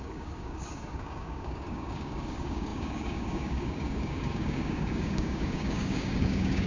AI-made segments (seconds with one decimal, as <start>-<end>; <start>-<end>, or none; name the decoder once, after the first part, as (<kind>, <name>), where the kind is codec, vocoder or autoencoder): 0.0-6.7 (codec, DAC)